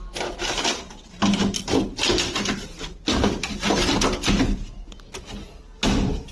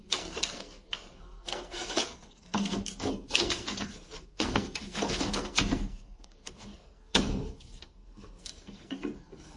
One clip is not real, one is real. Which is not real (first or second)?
second